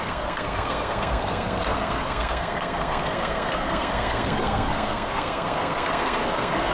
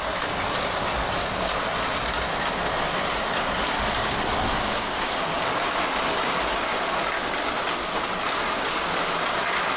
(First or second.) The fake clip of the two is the first